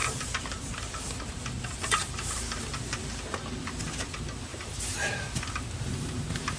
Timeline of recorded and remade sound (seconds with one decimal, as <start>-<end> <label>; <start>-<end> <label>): 0.0-0.7 remade; 0.7-2.0 recorded; 2.0-2.7 remade; 2.7-4.5 recorded; 4.5-6.6 remade